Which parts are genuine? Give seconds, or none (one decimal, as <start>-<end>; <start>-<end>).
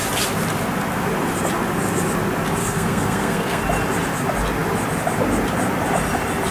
0.0-2.6; 3.6-6.5